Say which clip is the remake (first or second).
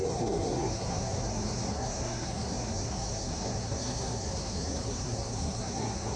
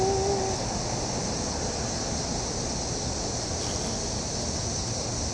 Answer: first